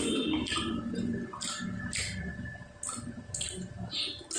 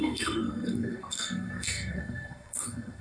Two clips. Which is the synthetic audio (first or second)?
second